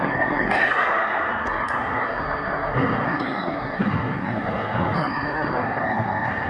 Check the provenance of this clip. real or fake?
fake